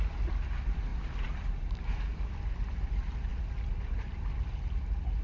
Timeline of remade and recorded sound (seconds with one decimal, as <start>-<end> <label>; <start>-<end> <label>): 0.0-0.9 recorded; 0.9-1.6 remade; 1.6-2.1 recorded; 2.1-2.9 remade; 2.9-5.2 recorded